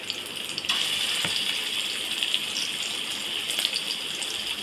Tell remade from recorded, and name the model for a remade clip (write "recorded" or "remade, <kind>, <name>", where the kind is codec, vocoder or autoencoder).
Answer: recorded